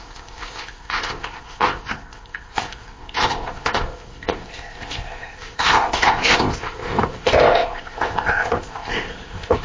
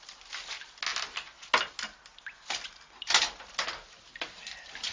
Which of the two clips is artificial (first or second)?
first